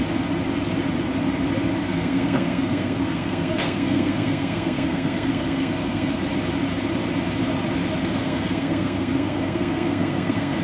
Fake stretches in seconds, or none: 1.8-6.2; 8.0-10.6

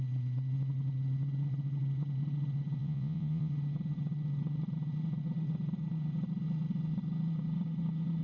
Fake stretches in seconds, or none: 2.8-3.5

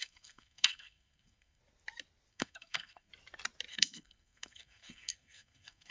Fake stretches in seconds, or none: 0.0-1.6; 2.3-3.1; 3.7-5.9

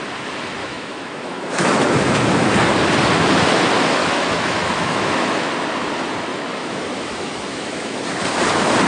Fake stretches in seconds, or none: 0.6-2.5; 4.0-5.5; 6.3-8.0

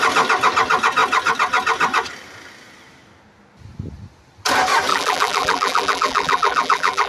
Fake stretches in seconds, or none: 4.9-7.1